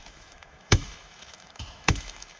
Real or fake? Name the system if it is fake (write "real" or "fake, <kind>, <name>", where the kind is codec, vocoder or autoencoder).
fake, autoencoder, DAC-VAE